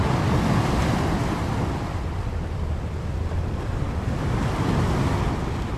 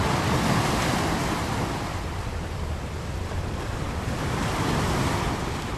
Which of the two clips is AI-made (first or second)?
second